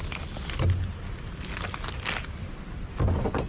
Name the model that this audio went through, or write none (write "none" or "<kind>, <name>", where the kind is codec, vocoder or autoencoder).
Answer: none